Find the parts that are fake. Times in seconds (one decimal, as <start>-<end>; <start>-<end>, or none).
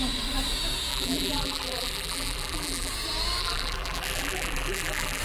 0.9-2.9; 3.4-5.2